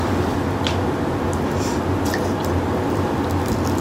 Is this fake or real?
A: real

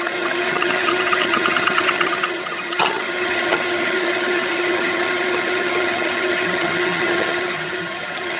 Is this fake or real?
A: fake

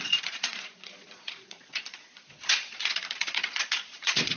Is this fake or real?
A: fake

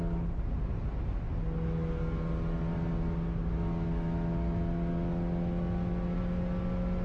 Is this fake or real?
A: real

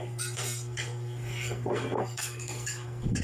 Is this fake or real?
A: fake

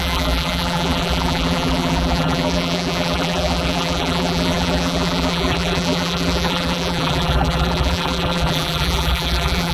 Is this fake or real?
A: fake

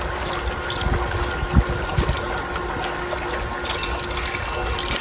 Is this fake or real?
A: real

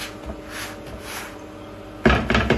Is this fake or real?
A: real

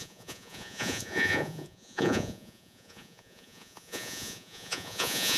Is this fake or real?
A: fake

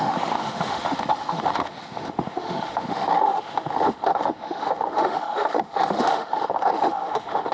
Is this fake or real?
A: fake